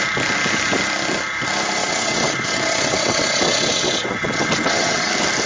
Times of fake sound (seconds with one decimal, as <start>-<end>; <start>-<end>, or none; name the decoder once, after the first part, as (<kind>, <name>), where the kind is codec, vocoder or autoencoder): 1.8-5.1 (vocoder, WaveNeXt)